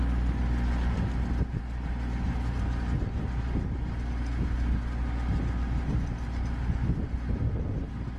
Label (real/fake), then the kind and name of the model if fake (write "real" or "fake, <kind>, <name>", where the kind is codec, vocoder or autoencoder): real